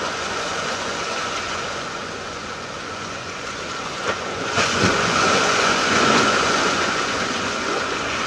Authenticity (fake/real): fake